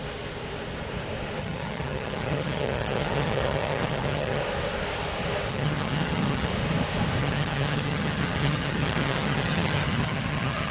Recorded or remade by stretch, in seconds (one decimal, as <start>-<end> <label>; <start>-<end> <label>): 0.0-1.4 recorded; 1.4-4.4 remade; 4.4-5.5 recorded; 5.5-6.5 remade; 6.5-7.2 recorded; 7.2-10.7 remade